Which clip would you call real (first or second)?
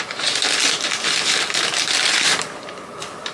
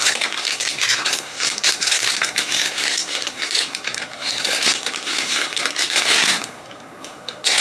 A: first